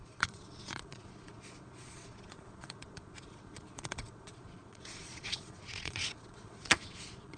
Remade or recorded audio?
remade